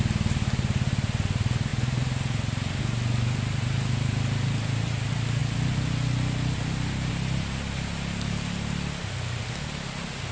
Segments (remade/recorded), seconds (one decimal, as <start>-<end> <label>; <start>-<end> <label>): 0.0-10.3 recorded